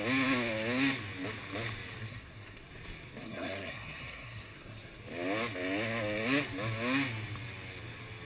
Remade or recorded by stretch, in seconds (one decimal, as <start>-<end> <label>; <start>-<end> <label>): 0.0-2.0 recorded; 2.0-2.7 remade; 2.7-3.2 recorded; 3.2-5.0 remade; 5.0-8.2 recorded